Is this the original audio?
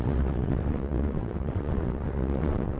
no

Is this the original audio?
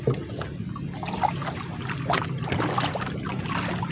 yes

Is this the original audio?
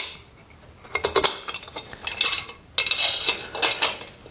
yes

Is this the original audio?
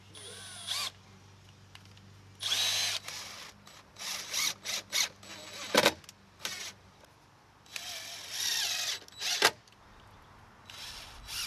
yes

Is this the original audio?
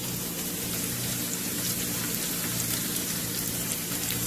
no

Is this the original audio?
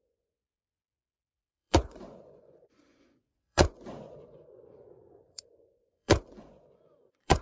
no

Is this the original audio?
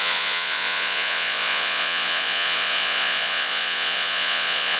no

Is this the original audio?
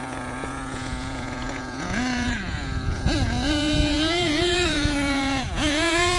no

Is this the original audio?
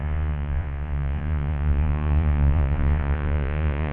no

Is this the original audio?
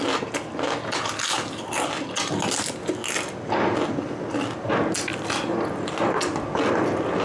yes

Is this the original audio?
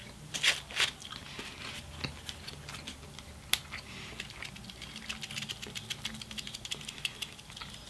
yes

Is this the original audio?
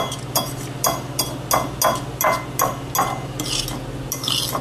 yes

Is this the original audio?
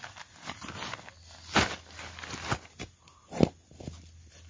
yes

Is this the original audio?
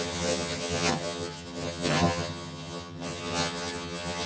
no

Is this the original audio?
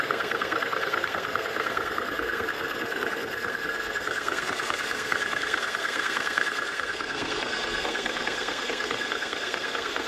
no